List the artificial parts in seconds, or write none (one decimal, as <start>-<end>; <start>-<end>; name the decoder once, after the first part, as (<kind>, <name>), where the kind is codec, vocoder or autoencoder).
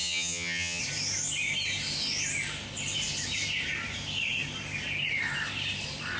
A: 0.0-0.8 (vocoder, HiFi-GAN)